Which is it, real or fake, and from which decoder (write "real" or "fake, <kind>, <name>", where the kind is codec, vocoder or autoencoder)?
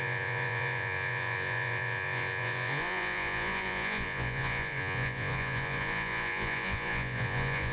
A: fake, vocoder, Vocos